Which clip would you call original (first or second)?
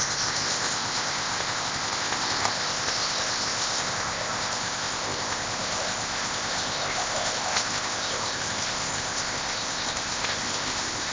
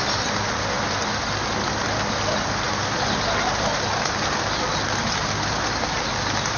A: second